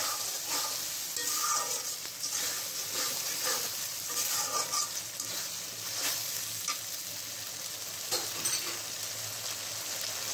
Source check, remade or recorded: recorded